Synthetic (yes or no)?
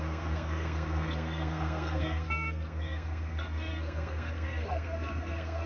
yes